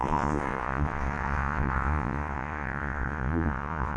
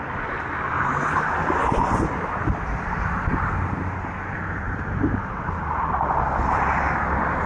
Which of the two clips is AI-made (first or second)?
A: first